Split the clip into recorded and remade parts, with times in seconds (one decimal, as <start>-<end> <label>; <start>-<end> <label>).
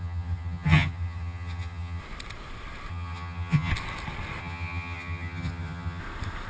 0.0-2.0 remade; 2.0-2.9 recorded; 2.9-3.7 remade; 3.7-4.4 recorded; 4.4-6.0 remade; 6.0-6.5 recorded